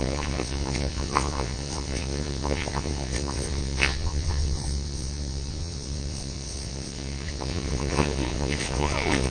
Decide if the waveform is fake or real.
fake